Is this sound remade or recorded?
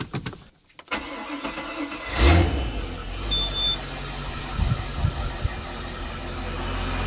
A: recorded